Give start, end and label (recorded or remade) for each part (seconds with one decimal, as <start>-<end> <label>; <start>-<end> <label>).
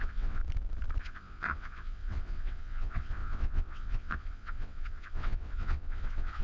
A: 0.0-0.4 remade; 0.4-1.0 recorded; 1.0-6.4 remade